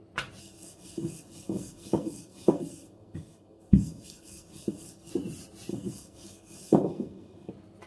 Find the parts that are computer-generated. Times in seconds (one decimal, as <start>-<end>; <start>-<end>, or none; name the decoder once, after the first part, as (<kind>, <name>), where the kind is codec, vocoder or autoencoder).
0.4-5.1 (codec, SNAC); 5.7-7.5